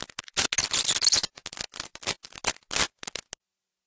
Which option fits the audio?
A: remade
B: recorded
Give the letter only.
B